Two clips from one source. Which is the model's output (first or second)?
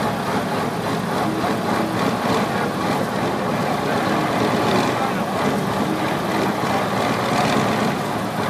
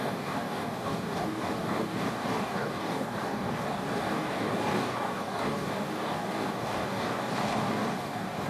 second